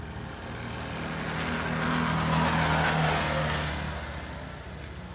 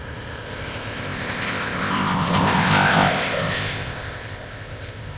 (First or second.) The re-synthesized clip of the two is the second